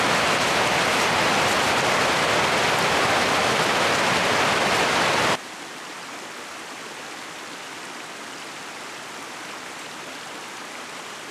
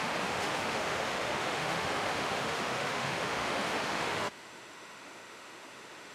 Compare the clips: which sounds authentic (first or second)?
first